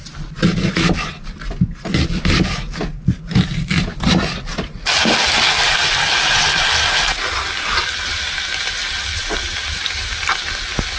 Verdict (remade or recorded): recorded